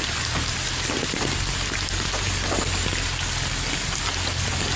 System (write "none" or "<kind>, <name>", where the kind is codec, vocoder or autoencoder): none